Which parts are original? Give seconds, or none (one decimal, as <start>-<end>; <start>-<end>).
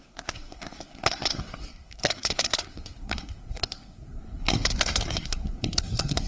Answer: none